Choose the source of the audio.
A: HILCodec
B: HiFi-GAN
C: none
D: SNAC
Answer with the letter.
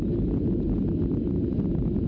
C